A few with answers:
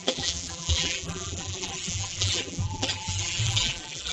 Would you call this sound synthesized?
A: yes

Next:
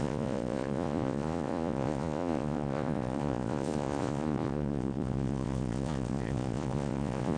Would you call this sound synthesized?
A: yes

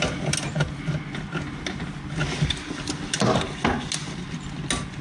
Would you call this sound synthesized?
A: no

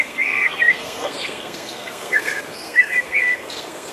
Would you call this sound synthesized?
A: yes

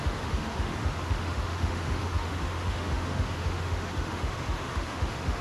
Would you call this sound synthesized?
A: yes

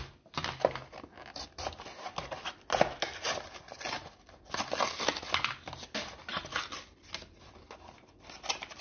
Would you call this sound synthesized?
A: no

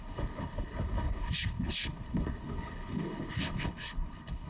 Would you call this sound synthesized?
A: yes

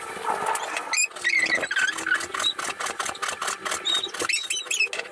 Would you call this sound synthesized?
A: no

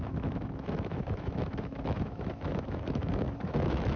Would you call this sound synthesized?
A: yes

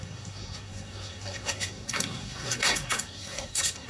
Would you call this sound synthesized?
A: yes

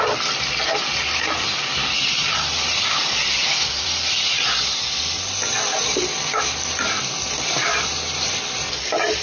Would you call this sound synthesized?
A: yes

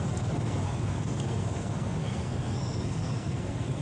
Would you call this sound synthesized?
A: yes